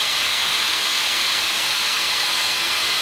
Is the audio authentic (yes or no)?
no